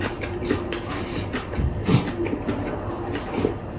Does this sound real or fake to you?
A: real